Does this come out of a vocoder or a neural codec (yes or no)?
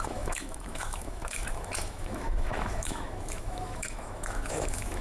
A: yes